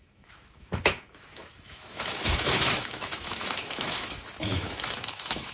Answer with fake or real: fake